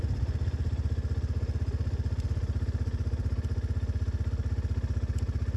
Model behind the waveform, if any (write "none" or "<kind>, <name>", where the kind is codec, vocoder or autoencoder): none